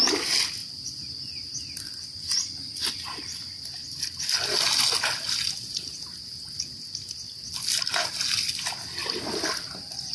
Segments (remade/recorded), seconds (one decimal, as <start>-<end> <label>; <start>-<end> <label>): 0.0-10.1 recorded